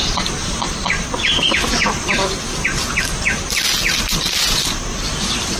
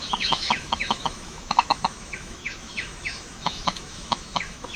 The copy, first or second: second